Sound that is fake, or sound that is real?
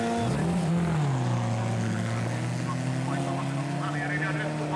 real